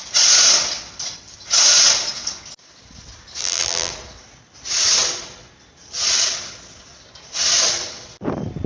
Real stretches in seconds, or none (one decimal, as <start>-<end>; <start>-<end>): 0.0-3.4; 3.9-8.7